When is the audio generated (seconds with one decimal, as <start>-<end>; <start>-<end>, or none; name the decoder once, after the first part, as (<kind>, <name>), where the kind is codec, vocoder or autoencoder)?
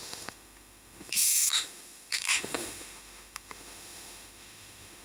0.0-5.0 (autoencoder, DAC-VAE)